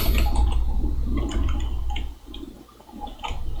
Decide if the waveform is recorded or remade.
recorded